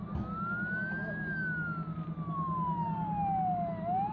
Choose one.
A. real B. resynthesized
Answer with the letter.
A